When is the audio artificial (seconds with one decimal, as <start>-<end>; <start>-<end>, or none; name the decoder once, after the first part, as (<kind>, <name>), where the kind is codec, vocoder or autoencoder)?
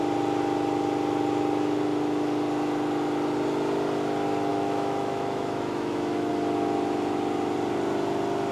4.5-6.3 (autoencoder, DAC-VAE)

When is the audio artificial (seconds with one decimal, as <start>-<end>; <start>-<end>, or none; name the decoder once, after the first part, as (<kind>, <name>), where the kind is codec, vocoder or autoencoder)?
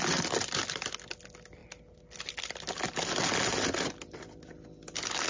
none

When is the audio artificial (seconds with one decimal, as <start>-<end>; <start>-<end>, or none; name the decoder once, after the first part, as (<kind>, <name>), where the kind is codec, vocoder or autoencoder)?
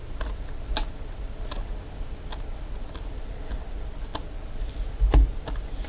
none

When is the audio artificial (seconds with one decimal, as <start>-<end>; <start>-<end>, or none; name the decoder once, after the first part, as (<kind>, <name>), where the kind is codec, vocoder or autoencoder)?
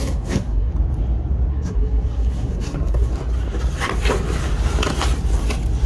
0.0-0.7 (codec, SNAC); 1.5-3.1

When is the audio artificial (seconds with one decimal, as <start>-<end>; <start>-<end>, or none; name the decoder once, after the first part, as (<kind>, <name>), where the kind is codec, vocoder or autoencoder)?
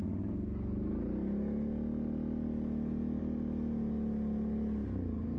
none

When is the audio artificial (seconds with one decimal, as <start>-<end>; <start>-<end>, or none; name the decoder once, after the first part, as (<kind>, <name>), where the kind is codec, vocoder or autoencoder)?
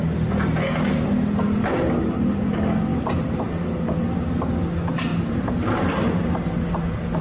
2.9-3.4 (vocoder, BigVGAN v2); 5.1-5.9